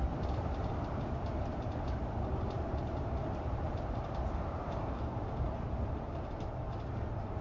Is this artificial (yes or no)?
yes